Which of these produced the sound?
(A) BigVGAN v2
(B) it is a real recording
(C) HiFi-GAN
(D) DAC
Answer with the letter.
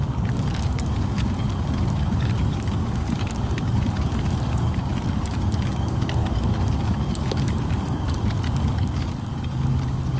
D